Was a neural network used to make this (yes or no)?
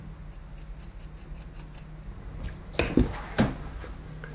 no